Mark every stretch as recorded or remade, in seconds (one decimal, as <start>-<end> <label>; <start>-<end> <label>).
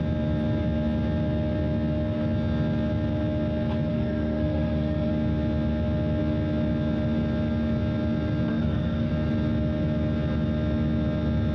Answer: 0.0-3.9 recorded; 3.9-5.1 remade; 5.1-8.5 recorded; 8.5-9.1 remade; 9.1-11.5 recorded